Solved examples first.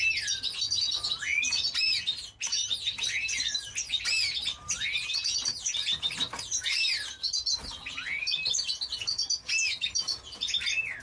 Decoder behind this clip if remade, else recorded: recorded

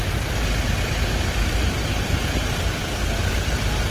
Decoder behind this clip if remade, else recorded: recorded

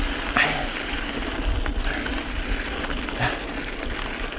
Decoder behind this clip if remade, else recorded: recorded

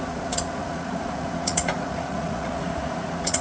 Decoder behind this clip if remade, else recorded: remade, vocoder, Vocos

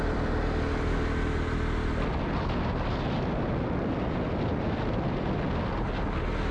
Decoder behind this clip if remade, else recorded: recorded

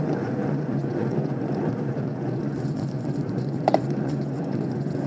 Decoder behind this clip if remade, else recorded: remade, vocoder, Vocos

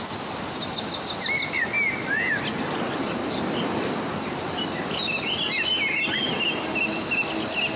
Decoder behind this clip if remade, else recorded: recorded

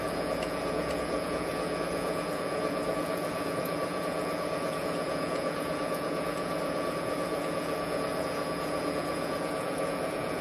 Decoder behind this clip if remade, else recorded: remade, vocoder, Vocos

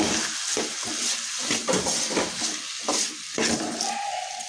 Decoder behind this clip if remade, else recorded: recorded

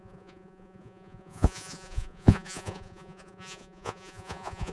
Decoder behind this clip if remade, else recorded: remade, vocoder, Vocos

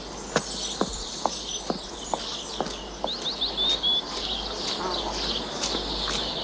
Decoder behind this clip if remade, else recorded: recorded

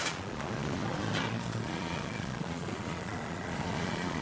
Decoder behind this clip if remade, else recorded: remade, vocoder, Vocos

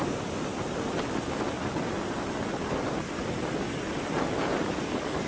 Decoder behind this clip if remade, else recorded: recorded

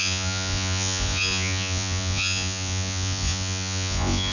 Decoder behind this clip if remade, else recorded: remade, vocoder, Vocos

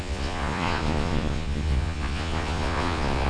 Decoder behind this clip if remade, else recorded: remade, vocoder, Vocos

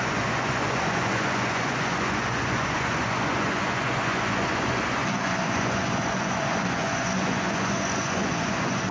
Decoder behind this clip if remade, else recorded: remade, vocoder, Vocos